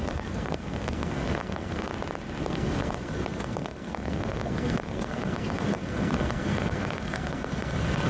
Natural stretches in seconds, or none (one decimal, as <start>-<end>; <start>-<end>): 1.9-2.4